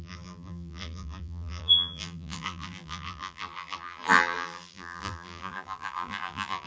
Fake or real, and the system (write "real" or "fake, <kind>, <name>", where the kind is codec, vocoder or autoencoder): fake, vocoder, BigVGAN v2